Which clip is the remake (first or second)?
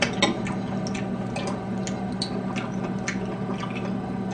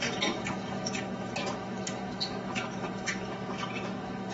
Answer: second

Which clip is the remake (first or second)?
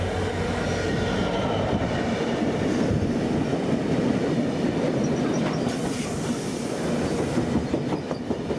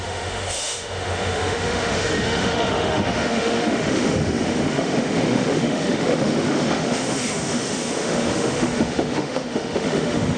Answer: second